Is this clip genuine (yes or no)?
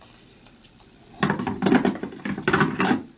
yes